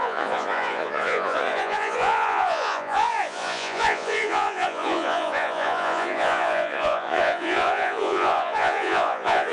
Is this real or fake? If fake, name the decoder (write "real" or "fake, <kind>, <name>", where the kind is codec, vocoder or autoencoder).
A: fake, vocoder, Vocos